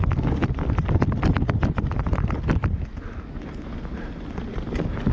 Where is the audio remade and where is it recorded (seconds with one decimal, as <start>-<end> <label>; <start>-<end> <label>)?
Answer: 0.0-5.1 recorded